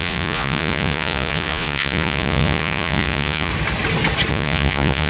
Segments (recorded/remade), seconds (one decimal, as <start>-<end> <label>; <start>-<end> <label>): 0.0-3.5 remade; 3.5-4.3 recorded; 4.3-5.1 remade